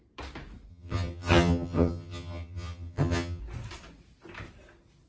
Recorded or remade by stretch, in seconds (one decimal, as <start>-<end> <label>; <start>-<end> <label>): 0.0-0.7 recorded; 0.7-3.4 remade; 3.4-5.1 recorded